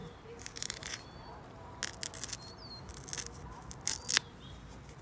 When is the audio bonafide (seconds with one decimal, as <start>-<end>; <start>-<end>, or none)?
1.8-5.0